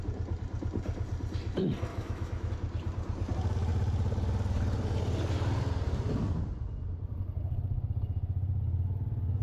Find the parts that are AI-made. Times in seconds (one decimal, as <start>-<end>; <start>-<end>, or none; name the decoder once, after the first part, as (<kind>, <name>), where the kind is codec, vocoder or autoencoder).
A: 1.9-2.5 (autoencoder, DAC-VAE)